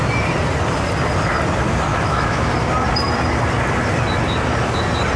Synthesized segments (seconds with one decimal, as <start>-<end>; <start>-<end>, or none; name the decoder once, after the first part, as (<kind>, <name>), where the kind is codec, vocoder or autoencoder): 1.9-2.5 (autoencoder, DAC-VAE)